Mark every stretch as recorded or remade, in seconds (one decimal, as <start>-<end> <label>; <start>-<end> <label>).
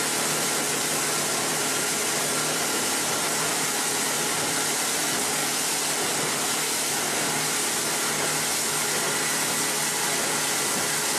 0.0-1.6 recorded; 1.6-5.0 remade; 5.0-5.4 recorded; 5.4-7.3 remade; 7.3-11.2 recorded